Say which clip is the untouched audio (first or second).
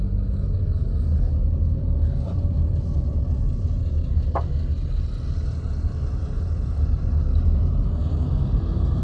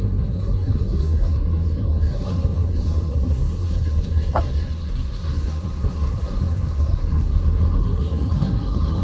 first